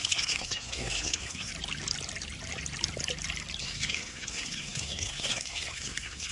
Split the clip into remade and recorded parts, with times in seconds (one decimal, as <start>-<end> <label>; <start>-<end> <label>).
0.0-1.5 remade; 1.5-3.6 recorded; 3.6-6.3 remade